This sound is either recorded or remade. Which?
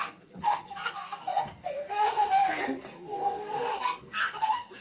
remade